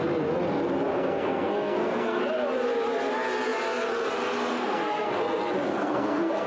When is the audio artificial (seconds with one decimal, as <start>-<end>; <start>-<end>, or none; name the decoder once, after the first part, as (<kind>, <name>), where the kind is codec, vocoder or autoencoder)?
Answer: 0.9-2.2 (codec, SNAC); 4.5-5.1; 5.7-6.5